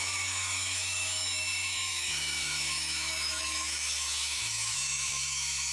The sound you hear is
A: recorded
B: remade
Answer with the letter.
B